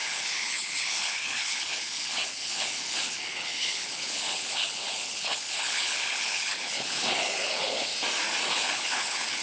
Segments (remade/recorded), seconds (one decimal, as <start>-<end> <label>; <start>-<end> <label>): 0.0-7.9 remade; 7.9-8.5 recorded; 8.5-9.4 remade